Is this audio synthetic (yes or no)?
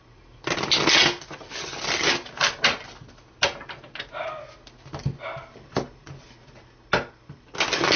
no